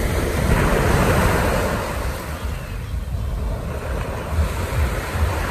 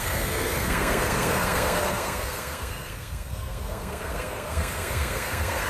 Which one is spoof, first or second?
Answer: second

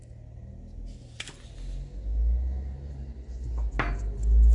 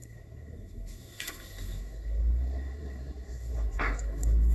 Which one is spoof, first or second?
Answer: second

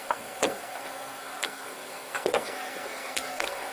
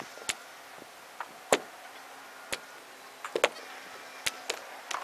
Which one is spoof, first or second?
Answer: first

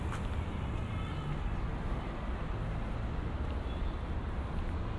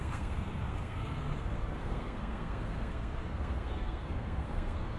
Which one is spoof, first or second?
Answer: second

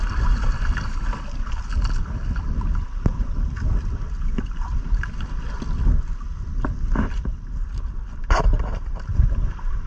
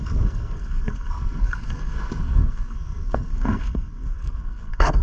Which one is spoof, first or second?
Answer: second